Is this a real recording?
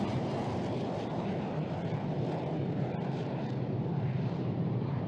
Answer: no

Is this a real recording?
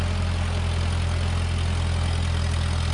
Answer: yes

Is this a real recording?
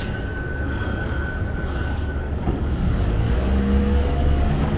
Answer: no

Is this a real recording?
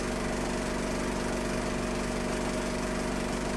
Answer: yes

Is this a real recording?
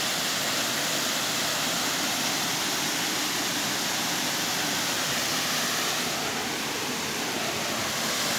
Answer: yes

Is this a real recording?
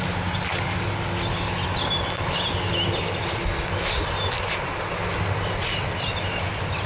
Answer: yes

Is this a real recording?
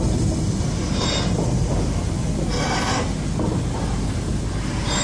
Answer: yes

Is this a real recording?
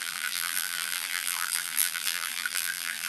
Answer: no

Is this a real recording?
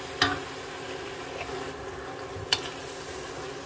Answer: yes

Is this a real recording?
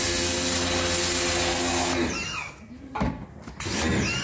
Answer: yes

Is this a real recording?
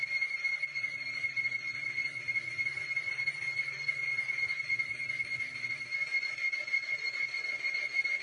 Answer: no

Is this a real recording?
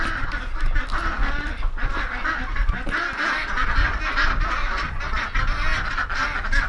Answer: yes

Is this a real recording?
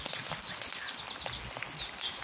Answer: yes